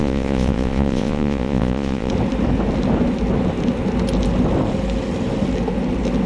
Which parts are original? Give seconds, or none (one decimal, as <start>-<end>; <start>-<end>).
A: 2.1-6.3